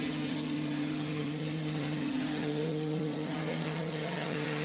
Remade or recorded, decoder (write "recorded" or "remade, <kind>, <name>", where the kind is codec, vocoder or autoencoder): remade, vocoder, HiFi-GAN